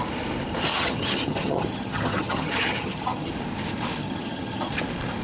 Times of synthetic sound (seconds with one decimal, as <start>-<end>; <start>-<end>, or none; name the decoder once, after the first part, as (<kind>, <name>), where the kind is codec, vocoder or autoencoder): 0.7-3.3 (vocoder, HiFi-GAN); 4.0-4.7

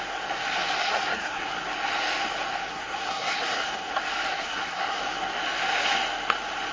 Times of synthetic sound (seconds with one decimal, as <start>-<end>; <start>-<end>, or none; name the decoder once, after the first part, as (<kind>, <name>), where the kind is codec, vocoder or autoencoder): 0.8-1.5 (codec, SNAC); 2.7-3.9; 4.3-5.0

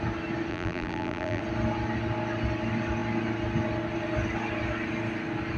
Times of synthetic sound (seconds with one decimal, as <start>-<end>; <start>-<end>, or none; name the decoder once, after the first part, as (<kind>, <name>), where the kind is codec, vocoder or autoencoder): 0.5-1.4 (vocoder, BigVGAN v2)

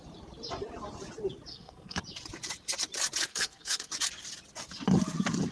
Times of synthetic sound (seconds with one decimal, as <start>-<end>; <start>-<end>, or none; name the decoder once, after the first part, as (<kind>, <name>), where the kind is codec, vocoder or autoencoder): 1.5-2.0 (codec, SNAC); 3.3-3.9